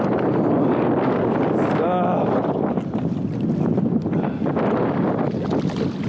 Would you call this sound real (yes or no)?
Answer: yes